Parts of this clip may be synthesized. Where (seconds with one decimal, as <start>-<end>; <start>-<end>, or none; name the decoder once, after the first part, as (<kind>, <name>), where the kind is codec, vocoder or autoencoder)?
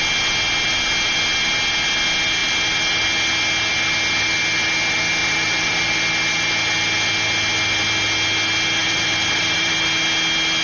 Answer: 5.2-5.9 (vocoder, BigVGAN v2); 8.8-9.7